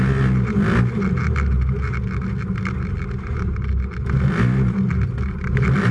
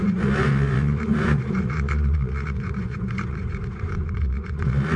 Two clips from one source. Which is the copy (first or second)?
second